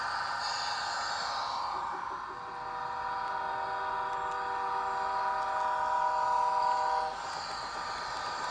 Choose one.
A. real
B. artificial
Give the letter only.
A